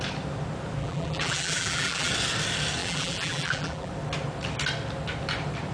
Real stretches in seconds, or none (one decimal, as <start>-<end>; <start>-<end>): 0.0-0.8; 2.1-2.8; 3.9-5.7